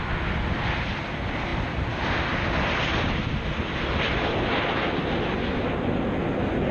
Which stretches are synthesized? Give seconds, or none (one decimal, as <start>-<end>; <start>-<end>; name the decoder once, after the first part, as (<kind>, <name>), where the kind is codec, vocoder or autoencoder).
none